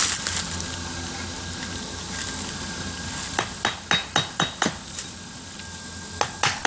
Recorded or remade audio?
recorded